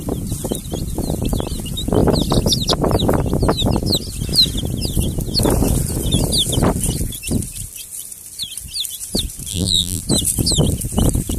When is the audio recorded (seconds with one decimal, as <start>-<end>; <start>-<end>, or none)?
0.0-9.5; 10.0-11.4